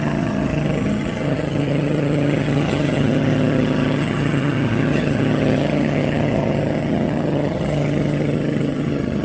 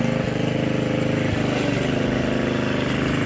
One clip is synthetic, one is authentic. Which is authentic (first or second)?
second